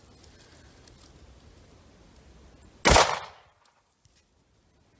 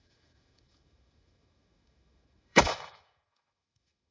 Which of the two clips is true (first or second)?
first